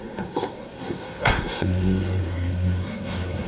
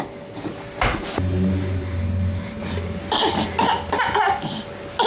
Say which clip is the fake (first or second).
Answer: first